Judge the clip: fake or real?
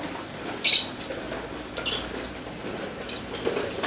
real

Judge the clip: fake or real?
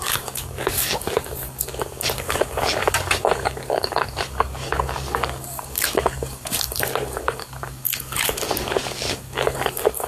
fake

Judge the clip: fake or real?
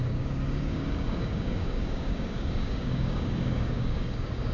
fake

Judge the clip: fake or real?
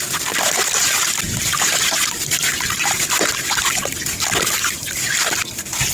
real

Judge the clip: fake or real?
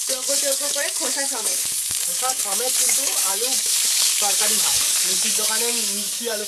fake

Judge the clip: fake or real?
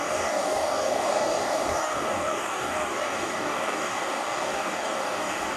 fake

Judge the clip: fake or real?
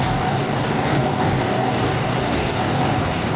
fake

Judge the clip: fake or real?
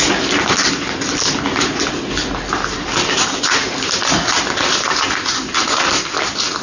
real